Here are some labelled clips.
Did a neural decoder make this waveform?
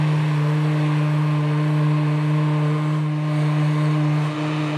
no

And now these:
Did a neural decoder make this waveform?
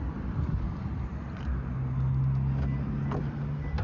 no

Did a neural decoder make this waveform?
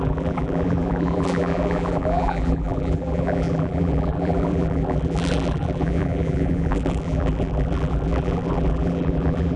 yes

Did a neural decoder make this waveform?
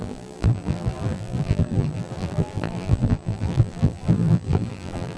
yes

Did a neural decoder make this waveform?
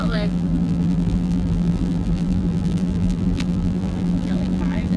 yes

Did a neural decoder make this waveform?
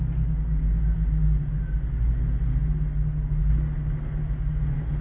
no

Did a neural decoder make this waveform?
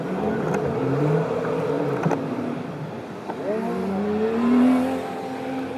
no